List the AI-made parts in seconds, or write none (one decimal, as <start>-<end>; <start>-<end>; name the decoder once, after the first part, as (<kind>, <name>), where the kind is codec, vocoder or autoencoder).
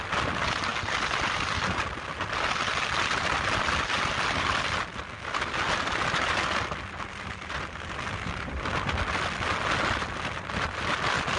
none